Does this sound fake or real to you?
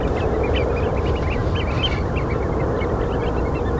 real